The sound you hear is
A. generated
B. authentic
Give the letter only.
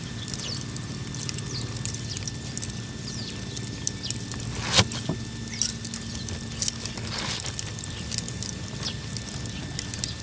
B